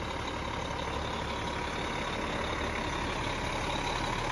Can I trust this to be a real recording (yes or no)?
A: yes